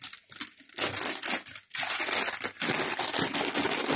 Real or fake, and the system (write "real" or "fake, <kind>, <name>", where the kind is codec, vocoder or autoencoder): real